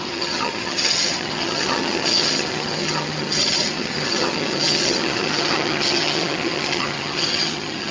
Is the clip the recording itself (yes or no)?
no